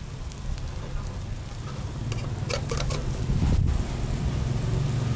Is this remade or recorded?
recorded